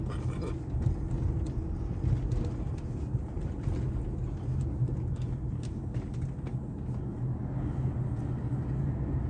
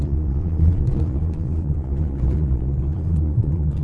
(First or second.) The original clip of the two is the first